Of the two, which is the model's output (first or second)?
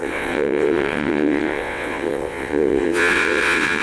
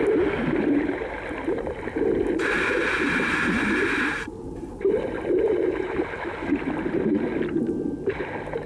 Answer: first